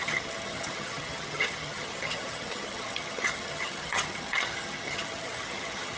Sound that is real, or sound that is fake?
fake